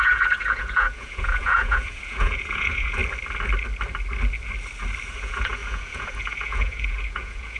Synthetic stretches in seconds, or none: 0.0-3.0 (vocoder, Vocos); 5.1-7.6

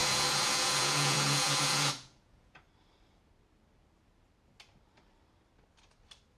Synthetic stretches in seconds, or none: 0.0-2.6 (vocoder, Vocos)

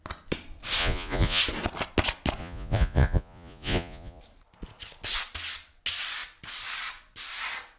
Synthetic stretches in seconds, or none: 0.8-1.4 (vocoder, Vocos); 2.4-4.2

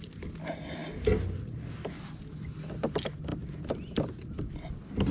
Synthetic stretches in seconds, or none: none

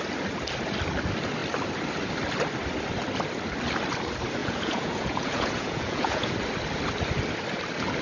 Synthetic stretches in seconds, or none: 4.4-6.3 (vocoder, Vocos)

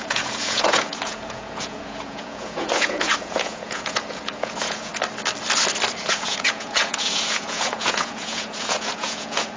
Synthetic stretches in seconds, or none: 0.0-4.9 (vocoder, Vocos); 6.0-9.6